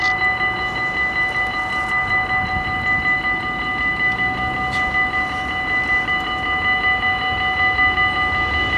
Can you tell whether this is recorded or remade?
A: recorded